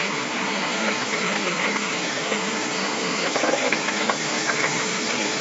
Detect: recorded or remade remade